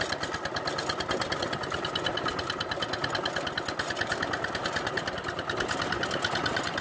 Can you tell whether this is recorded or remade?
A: recorded